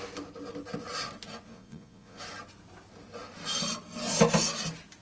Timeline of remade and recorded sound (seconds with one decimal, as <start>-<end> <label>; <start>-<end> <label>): 0.0-1.5 recorded; 1.5-2.2 remade; 2.2-5.0 recorded